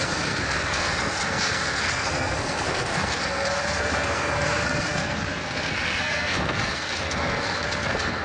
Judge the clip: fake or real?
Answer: fake